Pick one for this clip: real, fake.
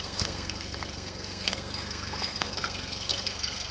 fake